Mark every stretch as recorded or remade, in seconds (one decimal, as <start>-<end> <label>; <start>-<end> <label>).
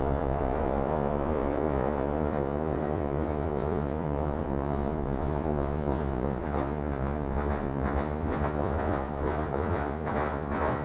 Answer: 0.0-10.8 remade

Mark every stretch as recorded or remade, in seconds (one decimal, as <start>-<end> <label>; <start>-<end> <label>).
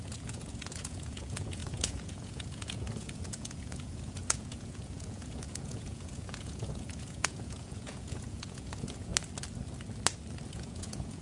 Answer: 0.0-9.1 remade; 9.1-10.5 recorded; 10.5-11.2 remade